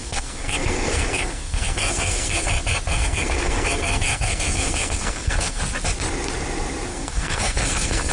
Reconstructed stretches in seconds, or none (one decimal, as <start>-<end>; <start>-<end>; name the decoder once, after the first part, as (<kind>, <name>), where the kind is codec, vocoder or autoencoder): 0.0-2.5 (codec, SNAC); 2.9-5.6; 6.9-8.1

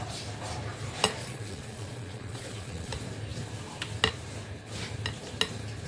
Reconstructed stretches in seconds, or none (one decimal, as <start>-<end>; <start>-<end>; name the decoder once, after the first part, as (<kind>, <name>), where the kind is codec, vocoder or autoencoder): 1.2-2.9 (vocoder, Vocos)

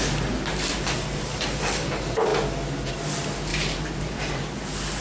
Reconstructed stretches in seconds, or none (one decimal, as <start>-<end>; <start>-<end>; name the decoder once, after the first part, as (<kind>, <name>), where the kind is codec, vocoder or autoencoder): 0.5-1.9 (vocoder, BigVGAN v2); 3.5-4.3

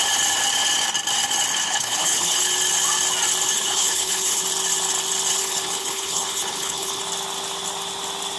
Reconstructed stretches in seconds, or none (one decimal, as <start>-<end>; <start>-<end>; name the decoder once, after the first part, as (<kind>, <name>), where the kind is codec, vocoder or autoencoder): 1.6-2.4 (codec, HILCodec); 3.5-4.4; 5.4-7.0

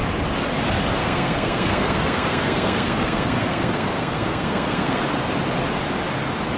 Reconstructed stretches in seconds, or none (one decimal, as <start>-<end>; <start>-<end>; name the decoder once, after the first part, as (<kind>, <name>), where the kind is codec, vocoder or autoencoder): 1.0-5.0 (codec, SNAC)

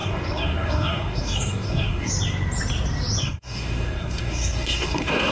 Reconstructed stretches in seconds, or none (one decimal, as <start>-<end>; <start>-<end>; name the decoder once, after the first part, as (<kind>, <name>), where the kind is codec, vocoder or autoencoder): 0.0-2.1 (codec, SNAC); 3.2-5.3

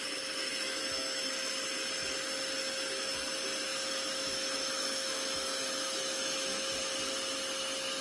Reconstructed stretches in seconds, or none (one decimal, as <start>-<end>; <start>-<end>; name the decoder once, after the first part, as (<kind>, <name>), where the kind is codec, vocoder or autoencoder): 0.5-1.5 (autoencoder, DAC-VAE); 2.6-3.1; 3.7-6.7